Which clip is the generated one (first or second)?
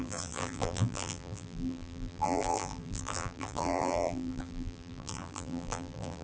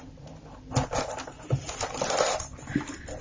first